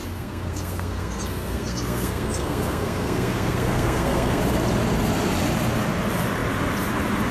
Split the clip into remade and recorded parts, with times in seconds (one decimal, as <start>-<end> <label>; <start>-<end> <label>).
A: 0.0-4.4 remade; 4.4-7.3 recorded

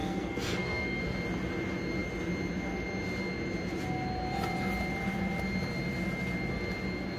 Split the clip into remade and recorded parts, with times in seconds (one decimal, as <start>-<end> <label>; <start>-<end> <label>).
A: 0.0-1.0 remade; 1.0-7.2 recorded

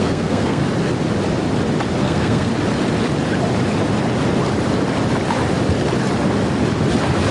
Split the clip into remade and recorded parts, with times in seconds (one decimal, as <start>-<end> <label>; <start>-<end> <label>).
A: 0.0-0.6 remade; 0.6-2.0 recorded; 2.0-2.5 remade; 2.5-7.3 recorded

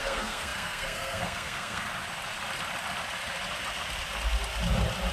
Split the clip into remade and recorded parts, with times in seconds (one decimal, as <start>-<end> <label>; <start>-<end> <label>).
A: 0.0-1.9 remade; 1.9-5.1 recorded